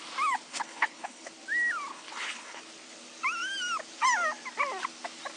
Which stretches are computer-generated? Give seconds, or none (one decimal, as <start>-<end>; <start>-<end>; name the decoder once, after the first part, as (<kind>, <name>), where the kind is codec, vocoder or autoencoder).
0.5-1.3 (codec, HILCodec); 1.9-2.6